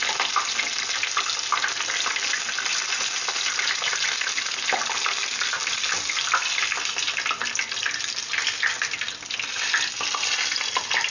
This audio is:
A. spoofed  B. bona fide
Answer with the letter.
B